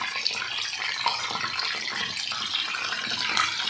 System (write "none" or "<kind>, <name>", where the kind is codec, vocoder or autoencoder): none